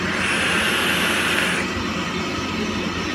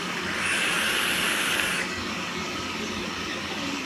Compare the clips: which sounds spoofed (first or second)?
second